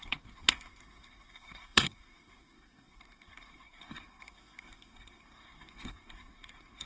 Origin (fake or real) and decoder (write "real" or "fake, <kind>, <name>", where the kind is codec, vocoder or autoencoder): fake, codec, SNAC